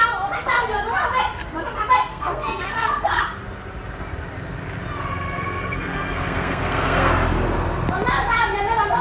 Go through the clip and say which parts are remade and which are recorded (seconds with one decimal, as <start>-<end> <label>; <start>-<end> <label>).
0.0-2.1 recorded; 2.1-3.2 remade; 3.2-5.1 recorded; 5.1-7.1 remade; 7.1-9.0 recorded